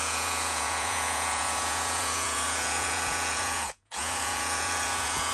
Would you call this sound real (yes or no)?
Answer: no